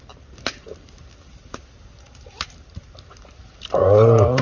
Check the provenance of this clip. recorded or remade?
recorded